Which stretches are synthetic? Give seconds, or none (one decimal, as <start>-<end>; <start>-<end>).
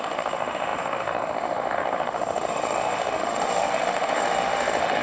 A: 0.0-5.0